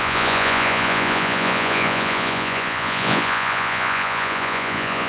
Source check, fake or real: fake